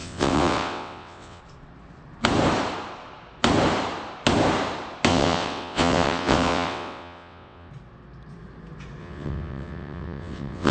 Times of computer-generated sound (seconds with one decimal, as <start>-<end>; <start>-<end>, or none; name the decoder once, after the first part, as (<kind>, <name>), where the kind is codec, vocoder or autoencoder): 0.0-1.4 (vocoder, WaveNeXt); 5.1-7.7; 9.0-10.7